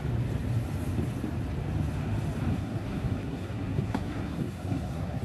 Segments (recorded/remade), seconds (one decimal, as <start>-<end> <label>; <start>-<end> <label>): 0.0-2.5 recorded; 2.5-5.2 remade